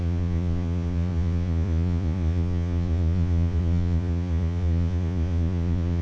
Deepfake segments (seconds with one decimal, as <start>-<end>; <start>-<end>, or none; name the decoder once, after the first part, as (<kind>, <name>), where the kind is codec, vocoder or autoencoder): 0.0-6.0 (vocoder, Vocos)